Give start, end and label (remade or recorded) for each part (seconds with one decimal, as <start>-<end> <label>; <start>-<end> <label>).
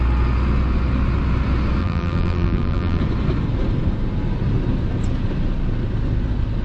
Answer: 0.0-1.8 recorded; 1.8-3.0 remade; 3.0-6.6 recorded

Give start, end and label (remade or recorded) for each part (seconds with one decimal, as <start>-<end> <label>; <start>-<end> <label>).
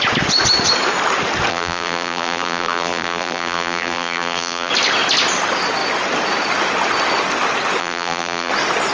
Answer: 0.0-1.5 recorded; 1.5-4.7 remade; 4.7-7.8 recorded; 7.8-8.5 remade; 8.5-8.9 recorded